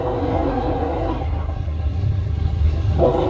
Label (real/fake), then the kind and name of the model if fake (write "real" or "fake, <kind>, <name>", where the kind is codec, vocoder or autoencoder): fake, codec, SNAC